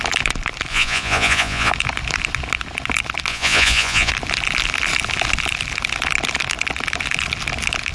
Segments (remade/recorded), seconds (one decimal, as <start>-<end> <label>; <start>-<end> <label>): 0.0-0.7 recorded; 0.7-1.7 remade; 1.7-3.3 recorded; 3.3-4.1 remade; 4.1-7.9 recorded